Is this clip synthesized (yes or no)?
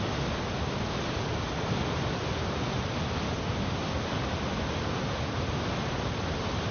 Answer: no